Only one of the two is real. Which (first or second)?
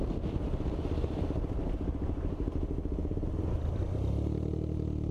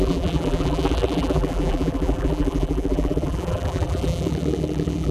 first